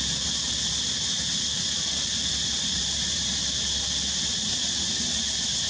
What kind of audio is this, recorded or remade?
recorded